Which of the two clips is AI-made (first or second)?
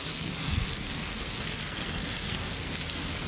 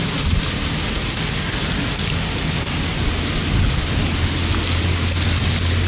first